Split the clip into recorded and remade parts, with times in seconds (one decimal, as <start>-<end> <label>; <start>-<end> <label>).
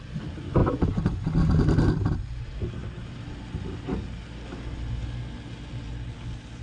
0.0-6.6 recorded